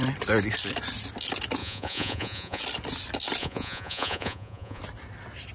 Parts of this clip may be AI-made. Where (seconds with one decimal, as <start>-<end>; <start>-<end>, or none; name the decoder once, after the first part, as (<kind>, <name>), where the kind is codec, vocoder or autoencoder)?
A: 1.6-2.6 (vocoder, Vocos); 3.4-4.8